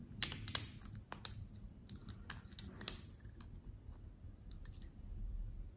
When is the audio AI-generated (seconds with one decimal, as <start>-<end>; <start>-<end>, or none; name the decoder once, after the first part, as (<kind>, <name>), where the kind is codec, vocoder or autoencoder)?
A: none